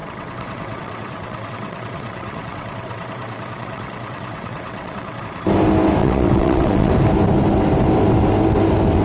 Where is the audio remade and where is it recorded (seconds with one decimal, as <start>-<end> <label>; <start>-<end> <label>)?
0.0-5.2 remade; 5.2-6.0 recorded; 6.0-6.9 remade; 6.9-9.0 recorded